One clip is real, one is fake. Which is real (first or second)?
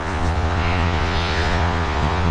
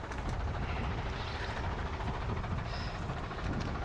second